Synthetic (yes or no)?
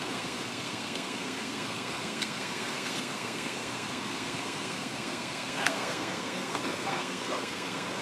yes